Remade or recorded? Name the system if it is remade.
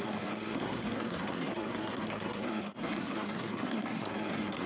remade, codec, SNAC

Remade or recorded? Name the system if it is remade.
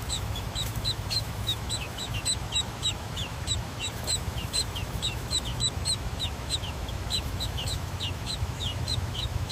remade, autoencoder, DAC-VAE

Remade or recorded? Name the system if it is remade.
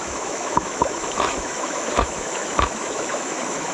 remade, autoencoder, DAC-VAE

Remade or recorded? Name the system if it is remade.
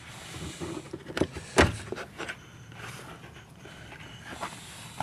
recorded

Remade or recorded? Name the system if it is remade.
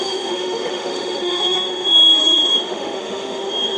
remade, autoencoder, DAC-VAE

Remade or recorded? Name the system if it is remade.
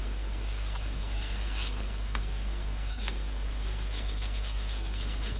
remade, codec, SNAC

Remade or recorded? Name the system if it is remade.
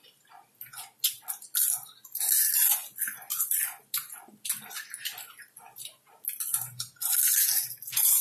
recorded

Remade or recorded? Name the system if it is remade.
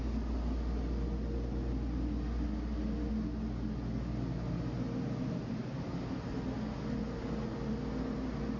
recorded